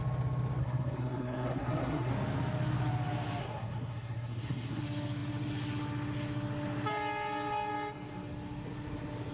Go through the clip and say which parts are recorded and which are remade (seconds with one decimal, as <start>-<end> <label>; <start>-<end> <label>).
0.0-0.6 recorded; 0.6-2.1 remade; 2.1-3.4 recorded; 3.4-4.8 remade; 4.8-9.3 recorded